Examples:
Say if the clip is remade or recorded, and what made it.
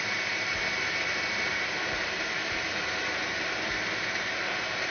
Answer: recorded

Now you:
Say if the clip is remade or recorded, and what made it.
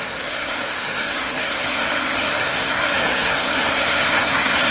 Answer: remade, codec, SNAC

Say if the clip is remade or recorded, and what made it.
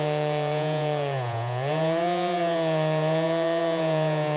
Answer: remade, vocoder, Vocos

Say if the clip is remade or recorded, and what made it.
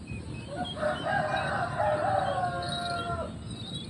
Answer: recorded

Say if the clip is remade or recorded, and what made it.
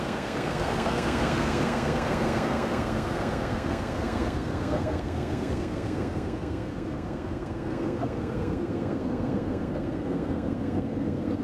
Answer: remade, codec, SNAC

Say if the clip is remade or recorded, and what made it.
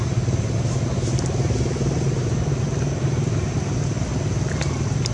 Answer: recorded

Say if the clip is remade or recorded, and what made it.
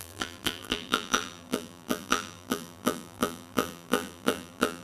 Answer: remade, vocoder, BigVGAN v2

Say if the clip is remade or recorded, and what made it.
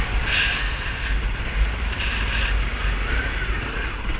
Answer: recorded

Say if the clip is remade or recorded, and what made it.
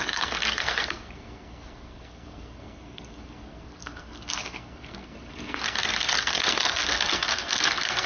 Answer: remade, codec, SNAC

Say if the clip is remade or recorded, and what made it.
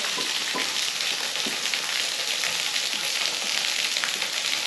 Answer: recorded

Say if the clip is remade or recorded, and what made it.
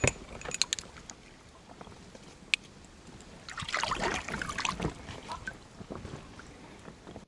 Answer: recorded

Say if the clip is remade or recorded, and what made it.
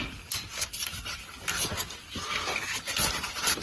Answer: recorded